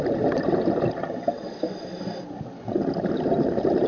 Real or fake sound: fake